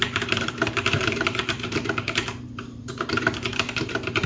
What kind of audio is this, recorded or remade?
remade